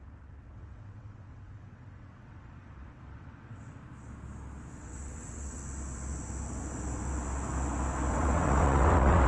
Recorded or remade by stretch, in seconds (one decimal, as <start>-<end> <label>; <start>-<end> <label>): 0.0-3.8 remade; 3.8-4.8 recorded; 4.8-5.6 remade; 5.6-8.1 recorded; 8.1-9.3 remade